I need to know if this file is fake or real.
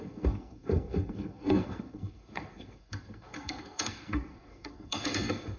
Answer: fake